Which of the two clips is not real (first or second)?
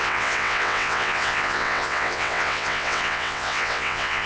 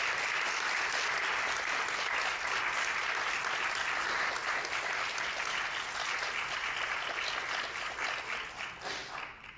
first